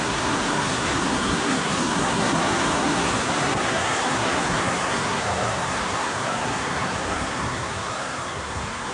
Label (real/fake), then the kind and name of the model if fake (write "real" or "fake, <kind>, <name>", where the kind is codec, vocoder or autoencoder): fake, codec, SNAC